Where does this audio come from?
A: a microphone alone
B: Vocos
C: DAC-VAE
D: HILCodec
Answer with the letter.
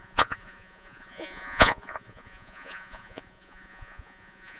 B